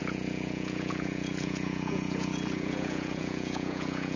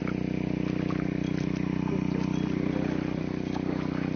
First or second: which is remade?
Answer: first